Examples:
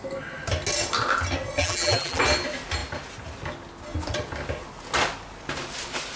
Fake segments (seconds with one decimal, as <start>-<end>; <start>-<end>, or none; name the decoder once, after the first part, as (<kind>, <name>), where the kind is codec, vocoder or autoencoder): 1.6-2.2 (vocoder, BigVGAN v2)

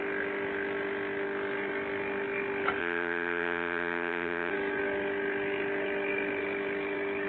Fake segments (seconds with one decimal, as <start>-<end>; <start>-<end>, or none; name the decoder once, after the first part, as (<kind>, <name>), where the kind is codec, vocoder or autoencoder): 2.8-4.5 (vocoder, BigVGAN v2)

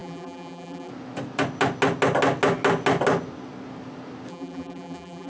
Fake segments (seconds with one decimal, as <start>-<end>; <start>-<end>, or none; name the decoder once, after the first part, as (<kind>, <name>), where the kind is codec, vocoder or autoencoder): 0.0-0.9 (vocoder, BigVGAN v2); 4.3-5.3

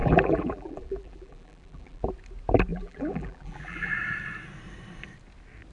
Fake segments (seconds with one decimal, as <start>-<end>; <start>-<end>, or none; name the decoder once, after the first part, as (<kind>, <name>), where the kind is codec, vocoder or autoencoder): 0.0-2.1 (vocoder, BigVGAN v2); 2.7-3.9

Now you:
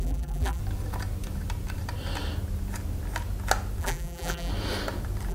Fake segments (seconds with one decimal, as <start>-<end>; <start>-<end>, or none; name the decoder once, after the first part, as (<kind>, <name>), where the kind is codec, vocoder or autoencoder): 0.0-0.6 (vocoder, BigVGAN v2); 3.8-4.5

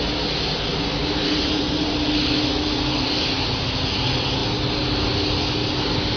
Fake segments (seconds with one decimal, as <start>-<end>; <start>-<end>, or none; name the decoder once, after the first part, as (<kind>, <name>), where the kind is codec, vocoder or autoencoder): 0.7-2.0 (vocoder, BigVGAN v2)

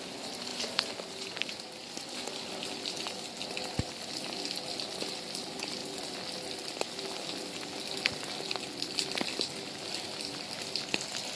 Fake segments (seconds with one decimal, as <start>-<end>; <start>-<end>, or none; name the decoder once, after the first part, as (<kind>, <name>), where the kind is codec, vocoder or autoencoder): none

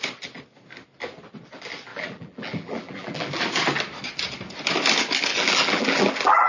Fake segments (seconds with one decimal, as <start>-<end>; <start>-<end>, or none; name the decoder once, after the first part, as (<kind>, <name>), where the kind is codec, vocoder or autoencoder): 1.9-3.4 (vocoder, BigVGAN v2); 5.3-6.5